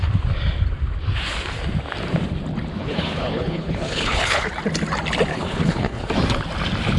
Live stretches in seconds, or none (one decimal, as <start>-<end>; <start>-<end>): 0.0-2.8; 4.5-5.3; 6.1-7.0